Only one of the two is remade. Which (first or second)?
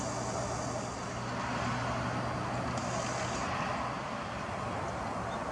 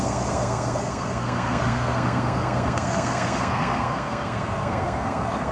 second